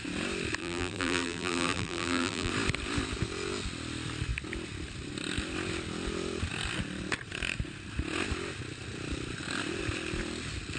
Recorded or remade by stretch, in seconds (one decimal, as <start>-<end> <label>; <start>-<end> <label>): 0.0-0.6 recorded; 0.6-2.5 remade; 2.5-10.8 recorded